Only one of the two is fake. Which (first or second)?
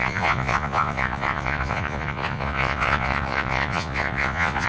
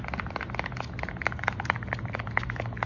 first